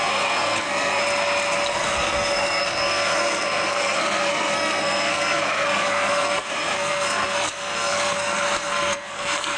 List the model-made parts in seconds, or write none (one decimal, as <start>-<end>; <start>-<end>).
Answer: 0.0-1.0; 1.7-9.6